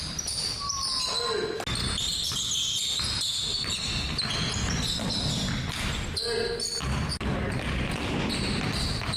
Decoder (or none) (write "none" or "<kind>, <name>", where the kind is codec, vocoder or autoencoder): none